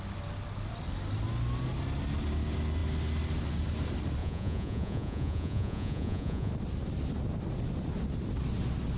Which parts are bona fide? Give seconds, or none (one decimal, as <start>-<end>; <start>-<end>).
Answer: 0.0-4.2; 6.5-9.0